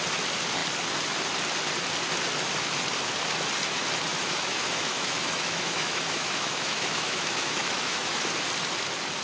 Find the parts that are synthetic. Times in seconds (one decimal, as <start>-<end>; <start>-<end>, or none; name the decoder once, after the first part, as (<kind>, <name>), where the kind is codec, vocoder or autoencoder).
4.1-8.3 (autoencoder, DAC-VAE)